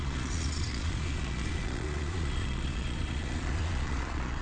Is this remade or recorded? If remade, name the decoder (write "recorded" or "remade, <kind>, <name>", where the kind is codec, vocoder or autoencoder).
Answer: remade, vocoder, Vocos